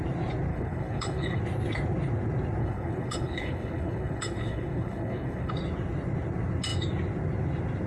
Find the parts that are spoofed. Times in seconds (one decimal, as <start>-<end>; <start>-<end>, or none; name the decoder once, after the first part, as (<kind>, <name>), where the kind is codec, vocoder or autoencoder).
0.5-1.4 (codec, HILCodec); 2.6-5.5